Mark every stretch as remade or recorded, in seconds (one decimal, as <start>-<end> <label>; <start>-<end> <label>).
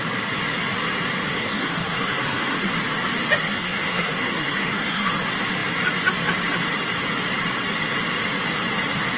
0.0-1.3 recorded; 1.3-2.7 remade; 2.7-3.4 recorded; 3.4-5.1 remade; 5.1-9.2 recorded